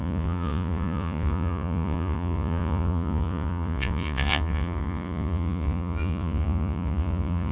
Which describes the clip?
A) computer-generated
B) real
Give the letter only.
A